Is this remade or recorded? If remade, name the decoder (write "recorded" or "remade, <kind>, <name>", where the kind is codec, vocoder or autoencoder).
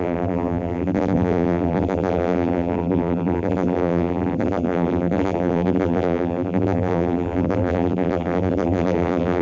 remade, vocoder, BigVGAN v2